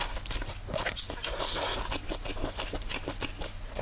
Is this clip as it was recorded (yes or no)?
yes